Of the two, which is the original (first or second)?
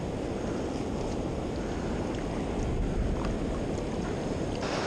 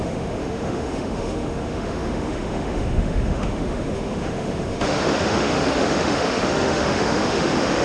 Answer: first